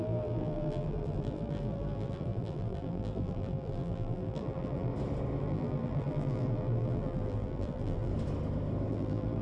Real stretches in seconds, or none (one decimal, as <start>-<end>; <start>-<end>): 4.9-5.4; 8.1-8.9